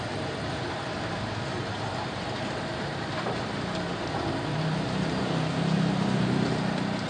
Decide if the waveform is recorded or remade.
remade